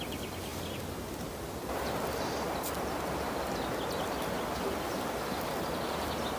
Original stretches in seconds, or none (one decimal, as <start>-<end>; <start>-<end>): 0.0-6.4